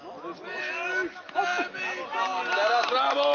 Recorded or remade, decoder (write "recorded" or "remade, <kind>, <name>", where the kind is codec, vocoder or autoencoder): recorded